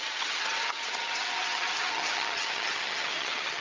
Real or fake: fake